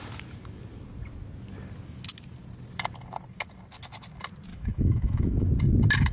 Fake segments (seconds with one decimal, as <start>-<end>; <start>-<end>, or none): 4.5-5.5